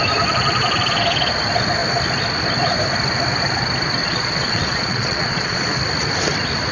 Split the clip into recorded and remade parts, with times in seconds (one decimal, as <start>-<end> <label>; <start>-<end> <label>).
0.0-4.0 recorded; 4.0-5.8 remade; 5.8-6.7 recorded